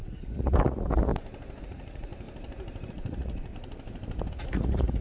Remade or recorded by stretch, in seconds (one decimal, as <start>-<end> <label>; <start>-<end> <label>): 0.0-1.1 remade; 1.1-1.6 recorded; 1.6-2.1 remade; 2.1-2.9 recorded; 2.9-3.5 remade; 3.5-4.3 recorded; 4.3-5.0 remade